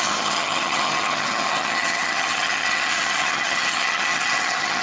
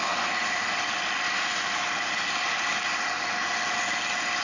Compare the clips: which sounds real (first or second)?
second